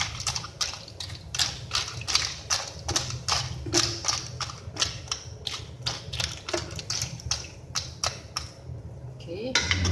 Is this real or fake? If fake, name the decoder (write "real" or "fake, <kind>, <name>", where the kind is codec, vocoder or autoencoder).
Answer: real